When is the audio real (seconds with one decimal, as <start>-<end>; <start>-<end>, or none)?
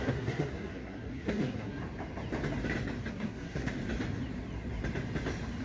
1.8-3.1; 3.7-5.6